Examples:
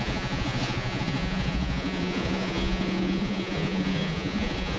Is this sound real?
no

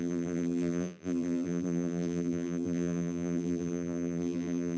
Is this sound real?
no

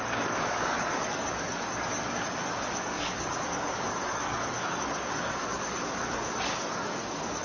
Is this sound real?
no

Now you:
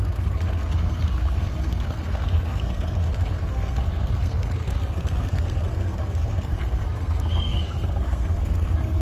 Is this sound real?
no